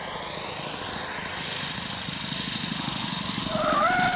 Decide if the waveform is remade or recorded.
recorded